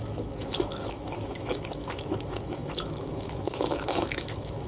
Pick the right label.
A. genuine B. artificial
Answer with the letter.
B